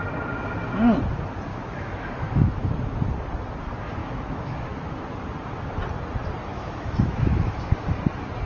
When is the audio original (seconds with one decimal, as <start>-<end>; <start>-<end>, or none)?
0.0-1.5; 2.7-4.0; 4.6-6.5; 7.7-8.5